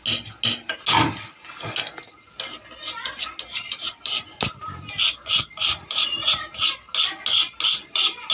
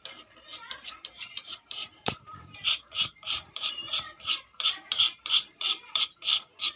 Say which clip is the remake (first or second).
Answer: second